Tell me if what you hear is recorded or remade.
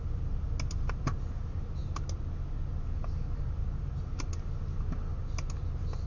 recorded